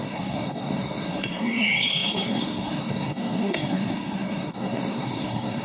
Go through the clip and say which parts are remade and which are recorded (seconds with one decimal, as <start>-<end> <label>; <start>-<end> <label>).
0.0-5.6 remade